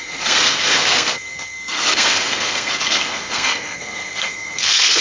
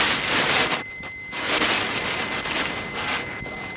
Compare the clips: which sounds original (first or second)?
second